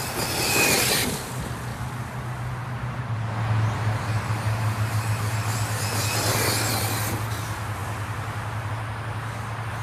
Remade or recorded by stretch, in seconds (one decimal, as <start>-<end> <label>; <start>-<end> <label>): 0.0-9.8 recorded